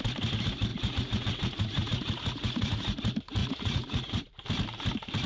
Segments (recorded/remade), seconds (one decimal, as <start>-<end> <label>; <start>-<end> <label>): 0.0-0.7 recorded; 0.7-3.0 remade; 3.0-3.4 recorded; 3.4-4.3 remade; 4.3-5.3 recorded